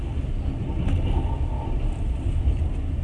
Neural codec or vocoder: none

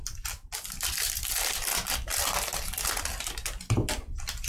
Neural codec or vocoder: none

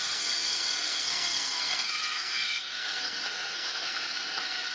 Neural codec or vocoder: codec, SNAC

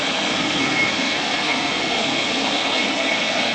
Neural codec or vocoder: codec, SNAC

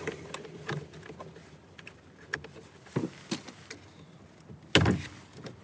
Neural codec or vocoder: none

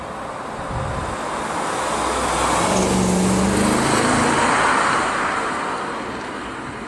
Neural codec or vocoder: none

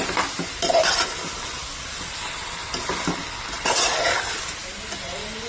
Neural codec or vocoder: none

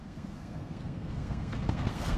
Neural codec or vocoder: codec, SNAC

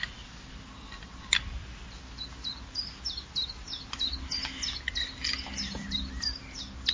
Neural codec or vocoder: none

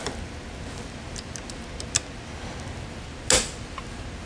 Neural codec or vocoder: none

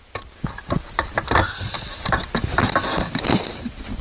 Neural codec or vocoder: none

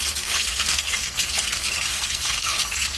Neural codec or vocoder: codec, SNAC